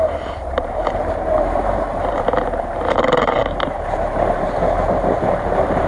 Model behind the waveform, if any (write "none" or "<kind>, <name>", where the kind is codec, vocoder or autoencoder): vocoder, BigVGAN v2